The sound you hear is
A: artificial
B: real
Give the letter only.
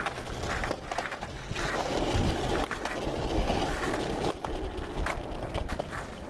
B